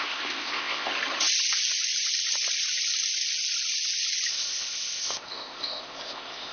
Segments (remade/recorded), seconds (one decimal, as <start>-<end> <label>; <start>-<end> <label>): 0.0-0.9 remade; 0.9-4.3 recorded; 4.3-6.5 remade